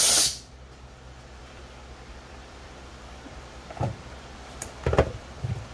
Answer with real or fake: fake